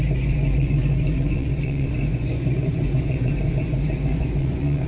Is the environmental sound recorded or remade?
remade